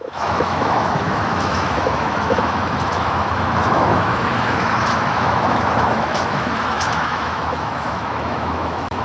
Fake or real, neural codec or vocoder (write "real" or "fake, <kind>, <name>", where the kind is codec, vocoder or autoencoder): fake, autoencoder, DAC-VAE